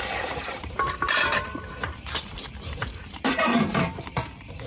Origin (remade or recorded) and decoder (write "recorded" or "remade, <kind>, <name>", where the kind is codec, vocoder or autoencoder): remade, vocoder, BigVGAN v2